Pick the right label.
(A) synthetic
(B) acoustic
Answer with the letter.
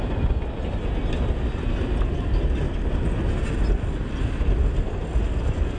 B